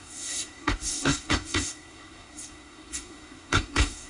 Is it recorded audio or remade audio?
remade